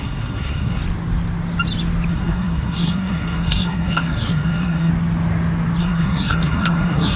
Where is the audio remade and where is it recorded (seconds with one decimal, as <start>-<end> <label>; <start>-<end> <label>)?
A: 0.0-0.8 remade; 0.8-2.1 recorded; 2.1-4.9 remade; 4.9-5.8 recorded; 5.8-7.2 remade